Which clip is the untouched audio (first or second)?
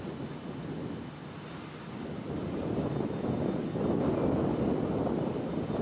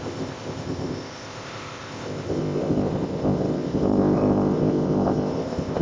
first